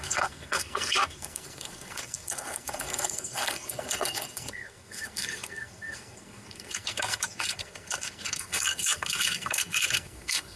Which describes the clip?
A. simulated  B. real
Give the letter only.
A